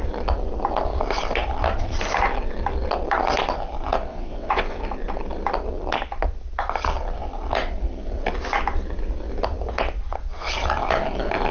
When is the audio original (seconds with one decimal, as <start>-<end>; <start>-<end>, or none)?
0.0-4.1; 4.8-11.5